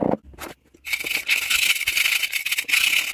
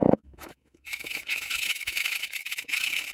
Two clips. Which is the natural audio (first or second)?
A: first